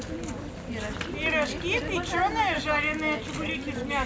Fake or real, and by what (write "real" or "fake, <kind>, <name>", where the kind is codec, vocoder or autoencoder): real